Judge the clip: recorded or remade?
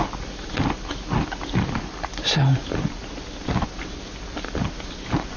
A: recorded